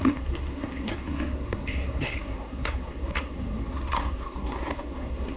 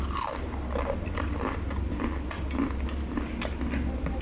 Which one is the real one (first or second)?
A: second